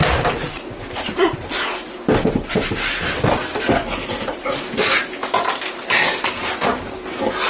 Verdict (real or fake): real